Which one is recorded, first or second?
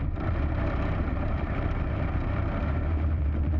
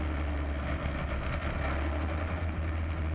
second